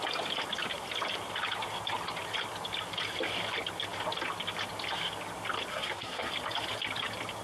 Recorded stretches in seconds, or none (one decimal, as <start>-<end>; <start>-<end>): 0.0-5.7; 6.3-7.4